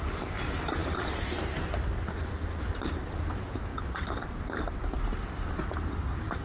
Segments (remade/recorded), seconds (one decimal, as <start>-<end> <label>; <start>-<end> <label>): 0.0-0.8 recorded; 0.8-3.2 remade; 3.2-3.7 recorded; 3.7-5.5 remade; 5.5-6.4 recorded